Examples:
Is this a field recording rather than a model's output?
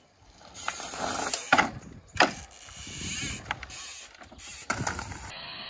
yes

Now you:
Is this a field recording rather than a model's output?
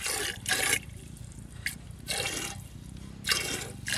yes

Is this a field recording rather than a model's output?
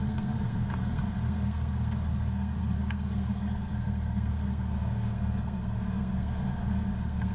no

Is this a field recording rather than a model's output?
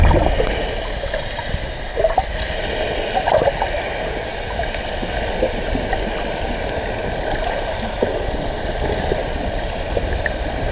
yes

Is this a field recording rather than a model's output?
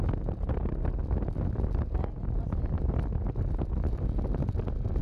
yes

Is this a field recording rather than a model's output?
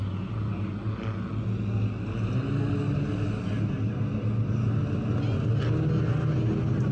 yes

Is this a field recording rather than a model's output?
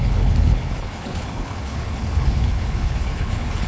no